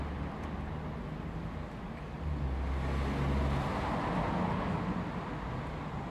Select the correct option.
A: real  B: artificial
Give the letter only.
A